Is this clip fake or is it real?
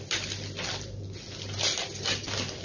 real